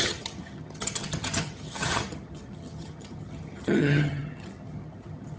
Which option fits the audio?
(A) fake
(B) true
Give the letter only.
A